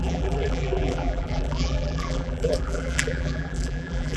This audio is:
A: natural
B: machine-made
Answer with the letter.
B